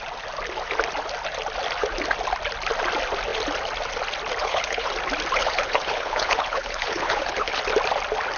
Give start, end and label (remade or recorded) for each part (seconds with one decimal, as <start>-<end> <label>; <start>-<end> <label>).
0.0-4.4 recorded; 4.4-4.9 remade; 4.9-5.4 recorded; 5.4-7.6 remade; 7.6-8.4 recorded